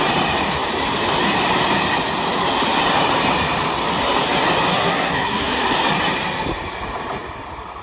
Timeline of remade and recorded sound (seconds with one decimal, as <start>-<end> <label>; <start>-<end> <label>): 0.0-4.7 recorded; 4.7-5.6 remade; 5.6-7.8 recorded